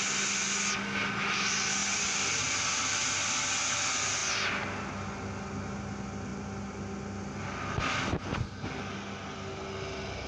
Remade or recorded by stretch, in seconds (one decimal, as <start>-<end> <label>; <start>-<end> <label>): 0.0-10.3 recorded